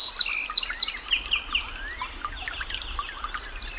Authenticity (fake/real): real